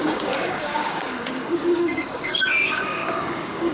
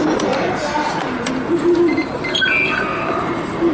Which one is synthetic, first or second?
first